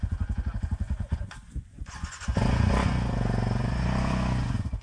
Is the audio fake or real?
fake